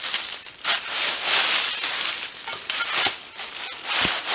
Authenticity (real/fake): real